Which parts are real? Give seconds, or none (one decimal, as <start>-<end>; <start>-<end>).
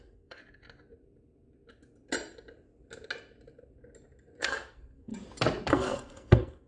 0.4-4.4; 5.1-5.7